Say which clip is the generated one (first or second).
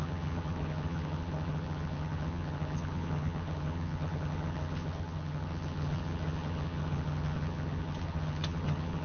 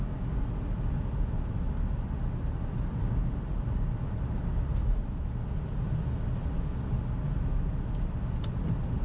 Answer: first